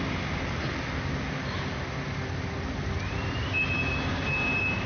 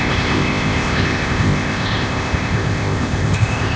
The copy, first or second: second